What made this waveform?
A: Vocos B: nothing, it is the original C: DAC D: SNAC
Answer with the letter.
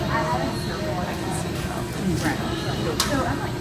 B